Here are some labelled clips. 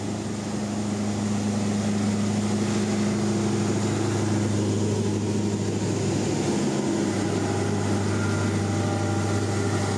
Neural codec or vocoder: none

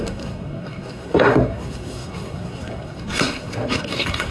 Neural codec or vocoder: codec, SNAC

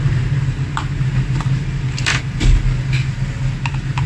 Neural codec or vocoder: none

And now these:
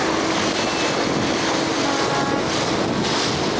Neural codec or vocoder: none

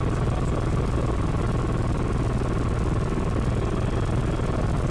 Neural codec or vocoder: none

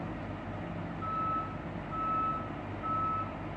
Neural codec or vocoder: none